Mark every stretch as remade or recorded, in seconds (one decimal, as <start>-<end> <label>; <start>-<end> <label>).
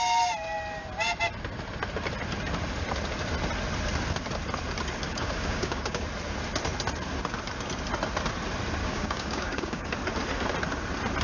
0.0-5.1 recorded; 5.1-6.0 remade; 6.0-8.8 recorded; 8.8-9.9 remade; 9.9-11.2 recorded